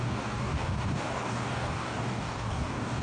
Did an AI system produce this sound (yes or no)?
yes